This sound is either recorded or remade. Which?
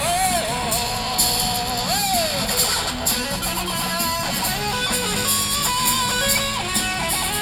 recorded